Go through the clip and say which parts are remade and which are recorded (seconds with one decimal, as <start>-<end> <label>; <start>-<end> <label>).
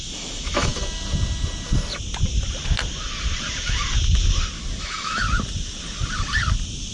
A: 0.0-0.7 remade; 0.7-4.8 recorded; 4.8-5.2 remade; 5.2-6.9 recorded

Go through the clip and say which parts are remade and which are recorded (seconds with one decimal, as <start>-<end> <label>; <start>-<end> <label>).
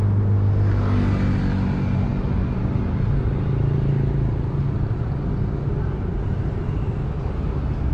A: 0.0-7.9 recorded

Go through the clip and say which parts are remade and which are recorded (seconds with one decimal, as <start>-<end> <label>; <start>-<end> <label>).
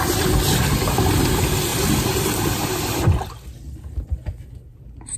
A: 0.0-5.2 recorded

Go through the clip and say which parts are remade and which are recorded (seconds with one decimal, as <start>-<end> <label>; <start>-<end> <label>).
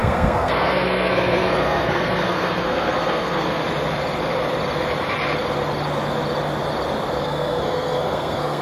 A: 0.0-3.6 remade; 3.6-7.2 recorded; 7.2-8.6 remade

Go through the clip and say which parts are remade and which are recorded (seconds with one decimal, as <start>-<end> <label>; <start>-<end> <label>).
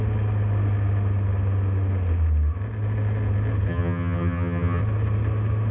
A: 0.0-3.7 recorded; 3.7-4.8 remade; 4.8-5.7 recorded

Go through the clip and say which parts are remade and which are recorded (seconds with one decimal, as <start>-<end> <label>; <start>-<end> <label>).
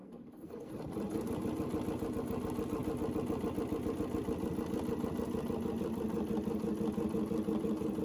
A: 0.0-0.7 remade; 0.7-8.0 recorded